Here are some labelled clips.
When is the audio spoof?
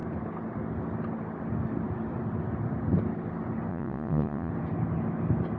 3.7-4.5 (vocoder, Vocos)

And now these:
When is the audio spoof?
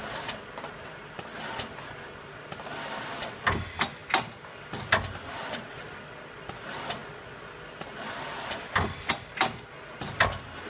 none